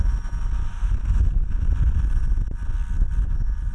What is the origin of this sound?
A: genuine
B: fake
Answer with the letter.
A